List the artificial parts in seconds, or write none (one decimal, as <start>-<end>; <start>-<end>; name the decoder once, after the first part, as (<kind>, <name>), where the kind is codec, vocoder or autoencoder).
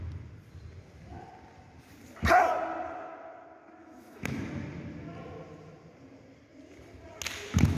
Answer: 3.8-4.4 (autoencoder, DAC-VAE)